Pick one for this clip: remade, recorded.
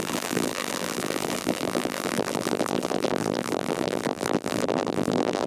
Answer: remade